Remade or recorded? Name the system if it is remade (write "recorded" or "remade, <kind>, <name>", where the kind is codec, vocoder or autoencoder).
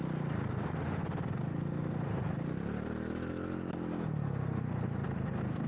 recorded